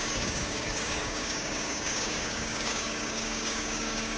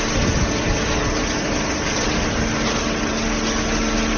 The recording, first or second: second